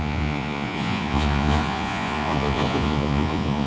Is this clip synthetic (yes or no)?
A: yes